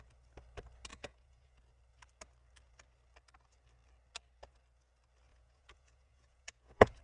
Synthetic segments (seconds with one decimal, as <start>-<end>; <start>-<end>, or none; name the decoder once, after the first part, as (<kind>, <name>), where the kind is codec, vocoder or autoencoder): 0.9-1.6 (vocoder, Vocos); 5.3-7.0